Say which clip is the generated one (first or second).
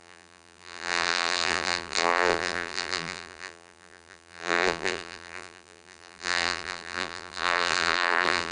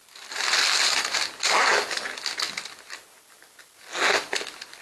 first